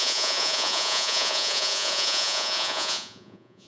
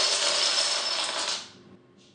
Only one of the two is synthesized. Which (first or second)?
first